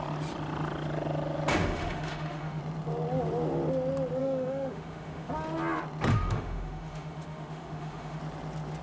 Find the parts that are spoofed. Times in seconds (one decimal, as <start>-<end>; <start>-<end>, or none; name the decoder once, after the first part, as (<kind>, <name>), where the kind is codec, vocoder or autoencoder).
1.6-2.6 (autoencoder, DAC-VAE); 4.2-5.3; 6.1-8.2